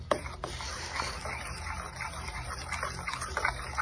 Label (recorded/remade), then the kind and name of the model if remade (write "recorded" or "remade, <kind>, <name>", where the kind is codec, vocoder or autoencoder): recorded